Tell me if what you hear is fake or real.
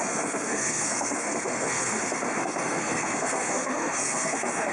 fake